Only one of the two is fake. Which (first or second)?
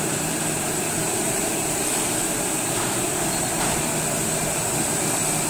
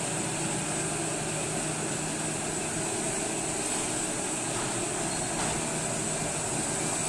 first